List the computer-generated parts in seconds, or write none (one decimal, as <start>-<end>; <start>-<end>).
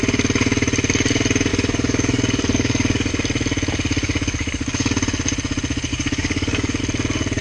1.5-3.1; 4.0-4.9; 5.9-6.8